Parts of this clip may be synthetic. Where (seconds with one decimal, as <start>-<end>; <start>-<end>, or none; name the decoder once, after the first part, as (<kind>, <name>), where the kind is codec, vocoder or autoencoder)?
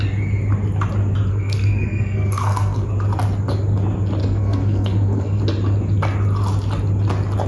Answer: 1.3-2.9 (codec, SNAC); 4.2-5.4